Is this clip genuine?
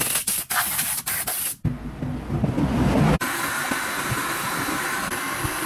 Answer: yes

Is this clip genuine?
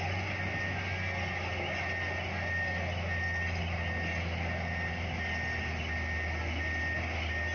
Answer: yes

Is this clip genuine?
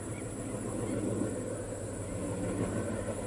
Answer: yes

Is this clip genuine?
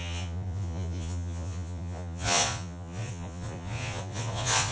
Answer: no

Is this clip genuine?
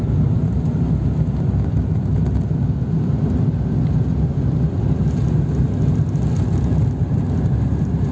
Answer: yes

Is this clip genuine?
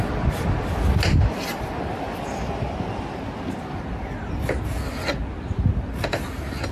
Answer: yes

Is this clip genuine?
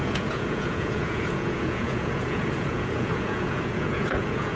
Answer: no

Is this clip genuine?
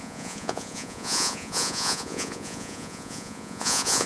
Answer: no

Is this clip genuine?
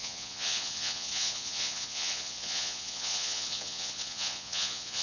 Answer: no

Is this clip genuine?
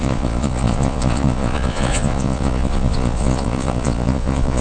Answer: no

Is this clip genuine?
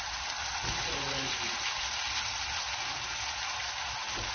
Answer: yes